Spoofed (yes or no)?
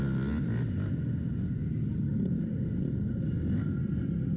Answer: no